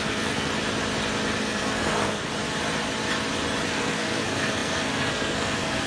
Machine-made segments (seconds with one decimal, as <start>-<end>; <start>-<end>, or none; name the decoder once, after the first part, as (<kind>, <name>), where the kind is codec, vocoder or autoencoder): 0.0-0.5 (codec, SNAC); 1.4-2.2; 3.7-5.9